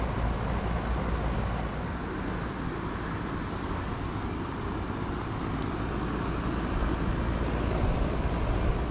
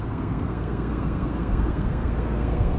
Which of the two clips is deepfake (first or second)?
second